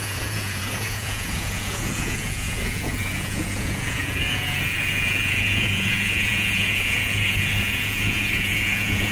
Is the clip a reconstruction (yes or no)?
yes